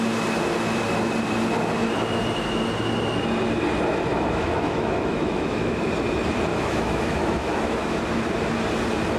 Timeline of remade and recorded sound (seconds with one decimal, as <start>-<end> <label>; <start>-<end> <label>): 0.0-4.1 recorded; 4.1-5.9 remade; 5.9-6.5 recorded; 6.5-8.0 remade; 8.0-9.2 recorded